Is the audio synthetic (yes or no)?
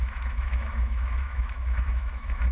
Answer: yes